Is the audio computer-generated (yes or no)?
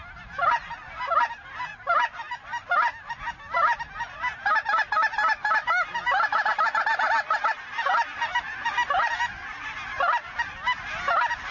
no